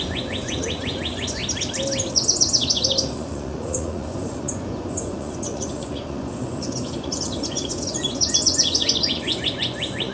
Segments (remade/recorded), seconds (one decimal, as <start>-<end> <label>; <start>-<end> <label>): 0.0-1.4 remade; 1.4-2.1 recorded; 2.1-10.1 remade

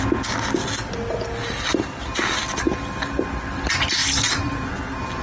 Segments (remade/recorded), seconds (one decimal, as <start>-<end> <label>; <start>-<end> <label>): 0.0-1.4 recorded; 1.4-2.0 remade; 2.0-4.0 recorded; 4.0-4.7 remade; 4.7-5.2 recorded

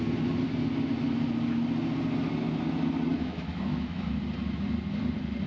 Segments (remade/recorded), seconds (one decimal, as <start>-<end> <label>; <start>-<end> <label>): 0.0-3.1 recorded; 3.1-4.2 remade; 4.2-5.5 recorded